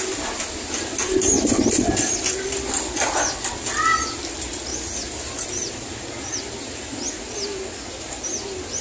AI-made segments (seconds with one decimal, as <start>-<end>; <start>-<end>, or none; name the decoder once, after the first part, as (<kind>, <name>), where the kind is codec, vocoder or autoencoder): none